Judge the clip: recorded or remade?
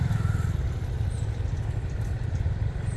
recorded